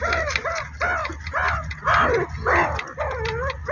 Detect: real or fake real